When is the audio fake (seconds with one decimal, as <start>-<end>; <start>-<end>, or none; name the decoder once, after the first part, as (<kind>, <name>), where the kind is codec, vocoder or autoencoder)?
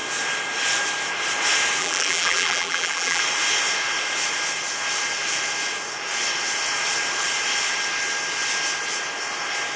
1.8-3.2 (vocoder, BigVGAN v2)